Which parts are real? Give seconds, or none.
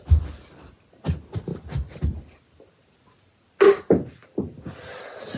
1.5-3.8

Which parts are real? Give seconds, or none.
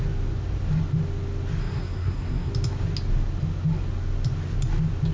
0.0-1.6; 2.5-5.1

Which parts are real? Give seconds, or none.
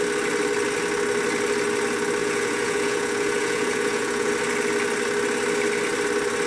0.0-2.2; 4.3-6.5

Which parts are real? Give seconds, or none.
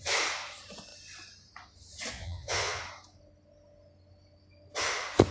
0.0-2.1; 2.8-5.3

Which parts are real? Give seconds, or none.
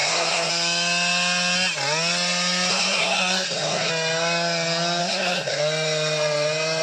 0.5-2.7; 3.9-5.0; 5.6-6.8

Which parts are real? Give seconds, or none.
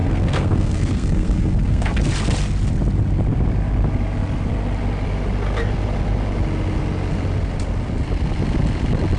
1.9-9.2